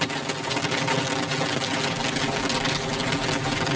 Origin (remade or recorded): recorded